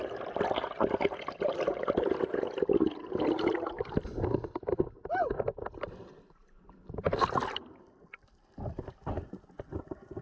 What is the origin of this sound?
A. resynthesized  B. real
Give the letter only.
B